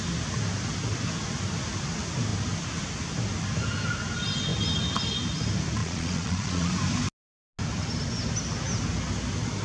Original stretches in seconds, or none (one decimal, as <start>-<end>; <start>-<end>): 0.0-5.8; 6.7-9.6